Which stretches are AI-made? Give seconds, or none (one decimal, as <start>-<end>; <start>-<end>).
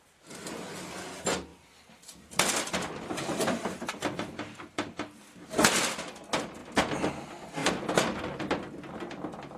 1.5-3.9; 7.6-8.2